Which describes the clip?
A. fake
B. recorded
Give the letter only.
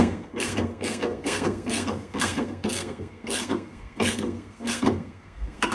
A